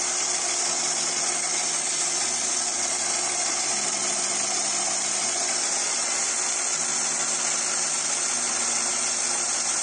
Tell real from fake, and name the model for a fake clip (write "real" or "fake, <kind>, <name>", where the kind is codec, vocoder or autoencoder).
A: real